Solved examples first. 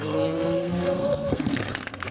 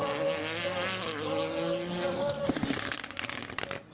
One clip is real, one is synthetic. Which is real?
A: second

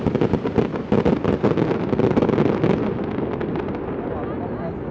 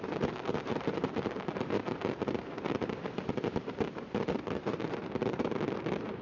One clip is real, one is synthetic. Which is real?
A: first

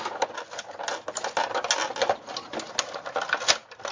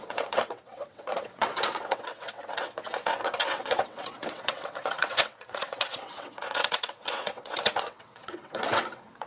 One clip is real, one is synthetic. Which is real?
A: first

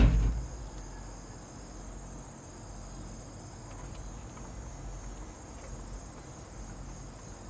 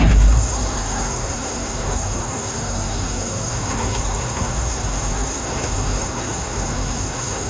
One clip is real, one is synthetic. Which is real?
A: first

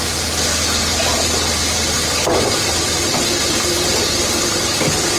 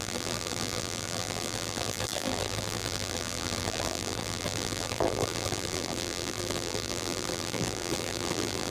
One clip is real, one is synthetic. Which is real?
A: first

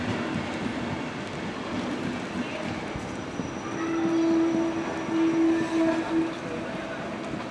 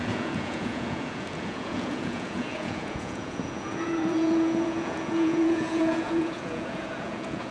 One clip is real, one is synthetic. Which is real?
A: first